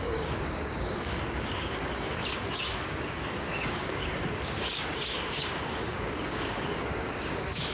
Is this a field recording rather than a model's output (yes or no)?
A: no